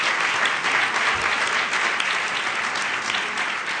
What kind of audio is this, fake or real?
real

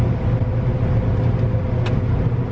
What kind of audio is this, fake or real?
real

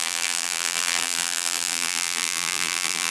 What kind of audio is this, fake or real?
fake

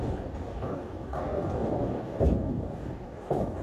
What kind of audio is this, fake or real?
fake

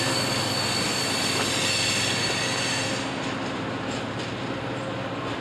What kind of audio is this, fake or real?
real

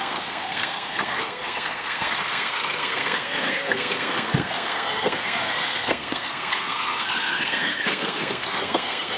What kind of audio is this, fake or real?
fake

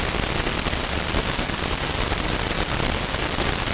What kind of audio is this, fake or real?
real